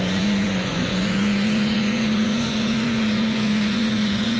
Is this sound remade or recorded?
remade